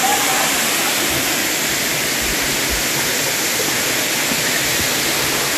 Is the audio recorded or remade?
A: recorded